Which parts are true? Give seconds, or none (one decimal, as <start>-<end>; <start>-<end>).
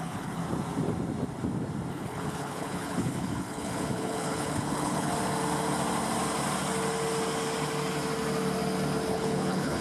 0.4-1.9; 5.1-9.1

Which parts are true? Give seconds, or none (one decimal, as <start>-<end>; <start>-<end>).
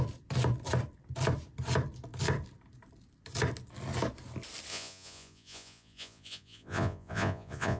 0.0-4.7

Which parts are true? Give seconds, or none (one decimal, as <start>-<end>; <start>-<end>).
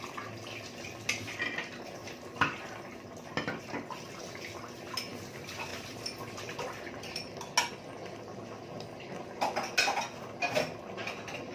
0.0-11.5